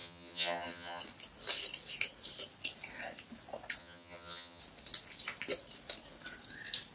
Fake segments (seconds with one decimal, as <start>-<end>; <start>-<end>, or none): 0.0-1.0; 3.8-4.6